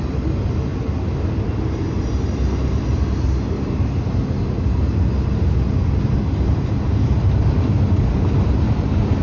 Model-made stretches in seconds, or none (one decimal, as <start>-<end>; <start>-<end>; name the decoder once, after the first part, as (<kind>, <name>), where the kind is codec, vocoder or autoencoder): none